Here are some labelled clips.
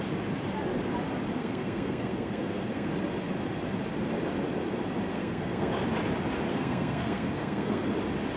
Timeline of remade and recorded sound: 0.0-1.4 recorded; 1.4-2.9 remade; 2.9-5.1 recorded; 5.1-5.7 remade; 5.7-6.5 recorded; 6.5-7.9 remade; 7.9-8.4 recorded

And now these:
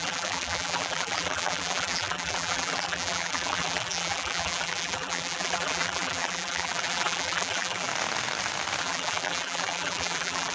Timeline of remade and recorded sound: 0.0-7.9 remade; 7.9-8.8 recorded; 8.8-10.5 remade

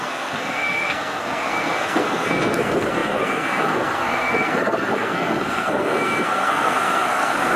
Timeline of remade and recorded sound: 0.0-7.6 remade

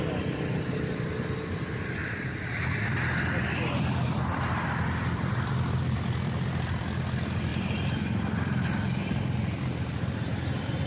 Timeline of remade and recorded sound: 0.0-10.9 remade